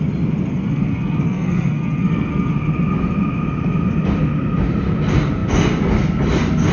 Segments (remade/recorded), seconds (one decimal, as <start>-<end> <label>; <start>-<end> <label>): 0.0-0.5 recorded; 0.5-2.5 remade; 2.5-6.7 recorded